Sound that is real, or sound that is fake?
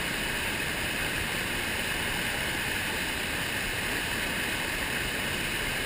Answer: fake